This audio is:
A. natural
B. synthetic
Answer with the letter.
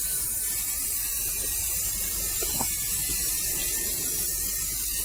A